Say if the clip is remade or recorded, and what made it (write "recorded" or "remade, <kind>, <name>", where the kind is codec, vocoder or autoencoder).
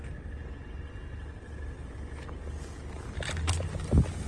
recorded